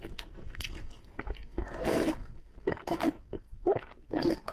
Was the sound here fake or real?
fake